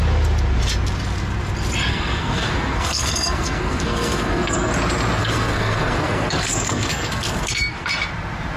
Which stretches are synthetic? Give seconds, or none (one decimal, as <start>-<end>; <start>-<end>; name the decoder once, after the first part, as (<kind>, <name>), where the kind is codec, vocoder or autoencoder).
1.9-4.7 (codec, SNAC); 5.2-7.9